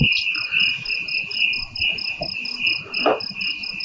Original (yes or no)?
yes